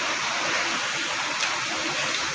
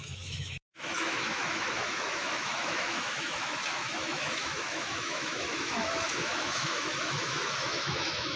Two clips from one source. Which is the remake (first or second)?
second